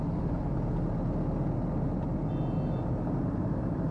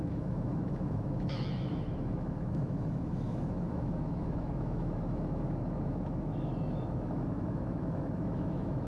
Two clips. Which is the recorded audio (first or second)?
first